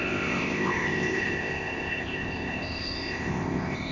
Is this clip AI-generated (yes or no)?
yes